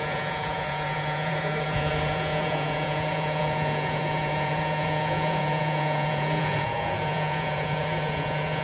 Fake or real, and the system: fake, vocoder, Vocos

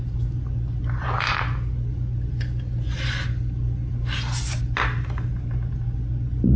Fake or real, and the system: real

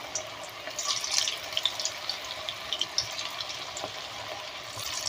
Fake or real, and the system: real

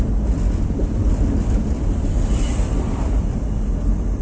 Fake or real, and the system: fake, vocoder, BigVGAN v2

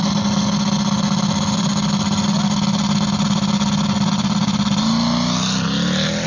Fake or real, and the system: real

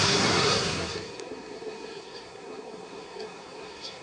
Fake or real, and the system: fake, codec, SNAC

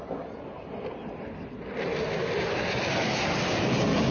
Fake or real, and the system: real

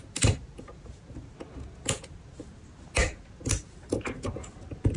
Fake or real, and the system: real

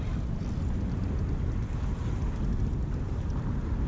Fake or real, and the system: real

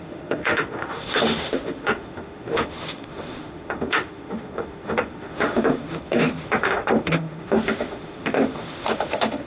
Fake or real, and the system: fake, autoencoder, DAC-VAE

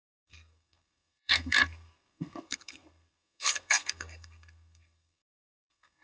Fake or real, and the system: fake, codec, SNAC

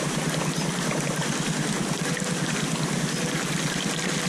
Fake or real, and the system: real